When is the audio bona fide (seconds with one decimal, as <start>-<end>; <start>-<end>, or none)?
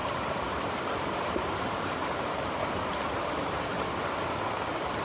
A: 3.7-5.0